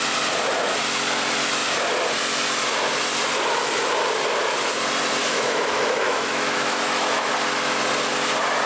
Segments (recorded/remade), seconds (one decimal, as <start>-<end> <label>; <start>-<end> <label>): 0.0-5.2 recorded; 5.2-7.3 remade; 7.3-8.7 recorded